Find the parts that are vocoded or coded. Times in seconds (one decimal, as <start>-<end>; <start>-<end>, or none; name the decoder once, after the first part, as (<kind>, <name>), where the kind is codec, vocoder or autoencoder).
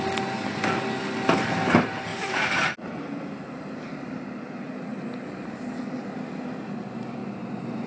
2.1-4.1 (vocoder, BigVGAN v2); 4.9-5.6; 7.2-7.9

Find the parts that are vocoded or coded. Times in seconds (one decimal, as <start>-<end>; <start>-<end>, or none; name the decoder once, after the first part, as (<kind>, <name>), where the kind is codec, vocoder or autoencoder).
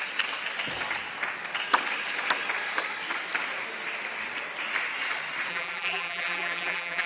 5.5-7.1 (vocoder, BigVGAN v2)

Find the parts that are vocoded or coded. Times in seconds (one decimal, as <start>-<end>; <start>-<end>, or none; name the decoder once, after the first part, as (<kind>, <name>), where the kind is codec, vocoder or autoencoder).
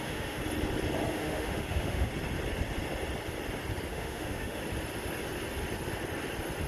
0.0-0.4 (autoencoder, DAC-VAE); 1.1-2.1; 3.9-4.6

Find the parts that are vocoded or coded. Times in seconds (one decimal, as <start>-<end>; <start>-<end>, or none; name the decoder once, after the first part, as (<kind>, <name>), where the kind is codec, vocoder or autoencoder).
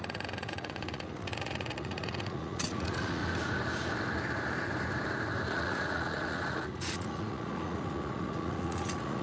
0.0-3.2 (vocoder, Vocos); 5.5-9.2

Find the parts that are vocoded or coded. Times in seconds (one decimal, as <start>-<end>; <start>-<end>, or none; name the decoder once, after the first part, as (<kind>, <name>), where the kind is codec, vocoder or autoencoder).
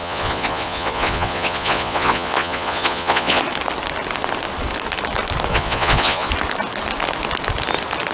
0.0-3.4 (vocoder, Vocos); 5.5-6.3